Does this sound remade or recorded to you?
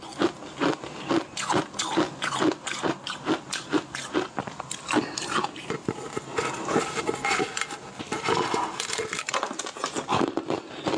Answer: recorded